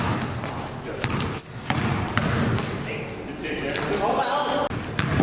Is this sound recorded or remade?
recorded